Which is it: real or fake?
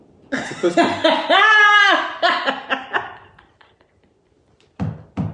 real